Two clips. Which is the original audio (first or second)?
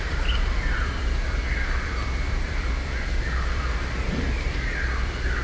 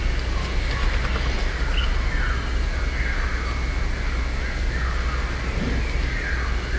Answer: second